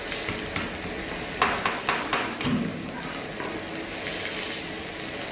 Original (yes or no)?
yes